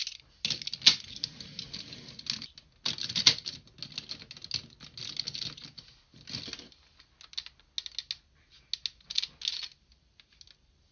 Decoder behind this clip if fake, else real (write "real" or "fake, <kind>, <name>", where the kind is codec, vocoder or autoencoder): real